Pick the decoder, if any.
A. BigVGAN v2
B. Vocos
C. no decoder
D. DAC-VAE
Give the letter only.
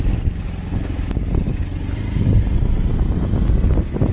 C